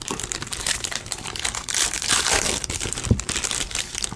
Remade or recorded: remade